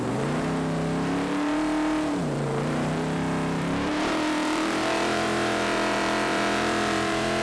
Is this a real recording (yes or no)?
no